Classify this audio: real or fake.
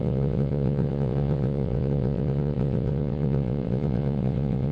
fake